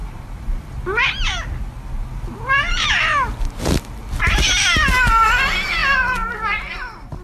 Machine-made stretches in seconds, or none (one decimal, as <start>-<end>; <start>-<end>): none